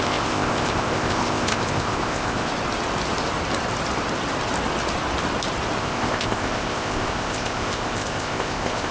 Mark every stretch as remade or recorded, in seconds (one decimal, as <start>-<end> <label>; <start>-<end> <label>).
0.0-2.5 remade; 2.5-5.8 recorded; 5.8-8.9 remade